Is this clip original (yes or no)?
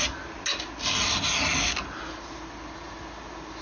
yes